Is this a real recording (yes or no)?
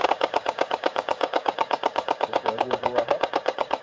no